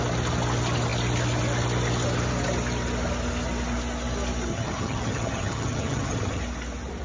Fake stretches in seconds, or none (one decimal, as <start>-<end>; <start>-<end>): 4.5-6.4